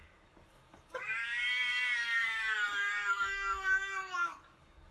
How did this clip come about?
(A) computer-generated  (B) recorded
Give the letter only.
A